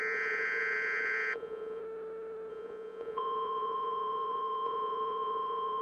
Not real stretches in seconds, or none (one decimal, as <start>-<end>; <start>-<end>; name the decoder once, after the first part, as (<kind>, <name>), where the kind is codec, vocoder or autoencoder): 0.0-1.8 (vocoder, Vocos); 2.5-5.8